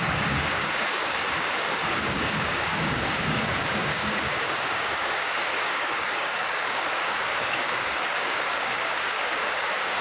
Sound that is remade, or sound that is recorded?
remade